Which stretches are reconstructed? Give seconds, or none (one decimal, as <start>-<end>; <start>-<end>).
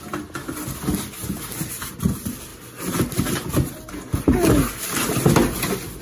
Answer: none